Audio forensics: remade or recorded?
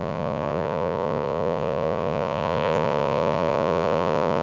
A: remade